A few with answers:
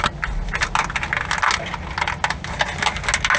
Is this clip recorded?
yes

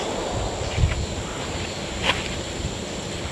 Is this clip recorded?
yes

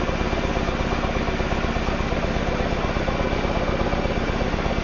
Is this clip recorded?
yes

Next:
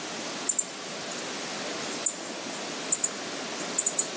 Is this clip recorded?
yes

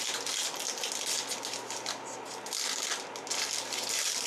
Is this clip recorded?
yes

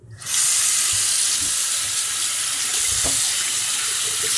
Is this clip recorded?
yes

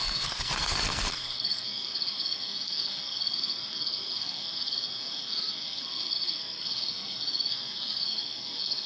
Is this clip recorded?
no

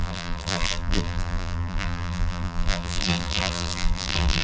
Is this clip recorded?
no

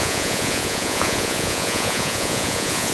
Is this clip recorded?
no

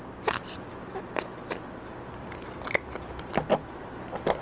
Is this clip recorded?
yes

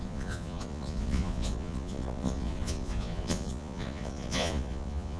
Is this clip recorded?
no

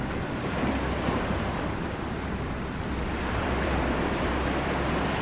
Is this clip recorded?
no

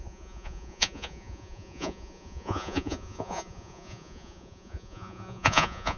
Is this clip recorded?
no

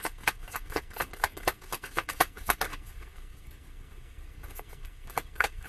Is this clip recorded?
no